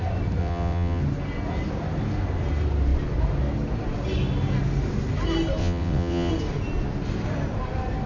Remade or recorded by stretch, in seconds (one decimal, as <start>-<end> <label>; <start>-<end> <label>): 0.0-0.4 recorded; 0.4-1.0 remade; 1.0-5.6 recorded; 5.6-6.3 remade; 6.3-8.1 recorded